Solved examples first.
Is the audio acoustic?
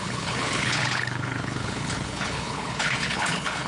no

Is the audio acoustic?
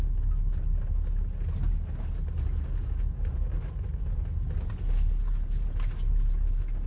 yes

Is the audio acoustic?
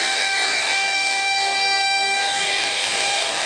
no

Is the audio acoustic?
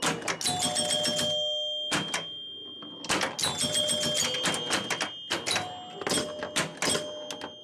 yes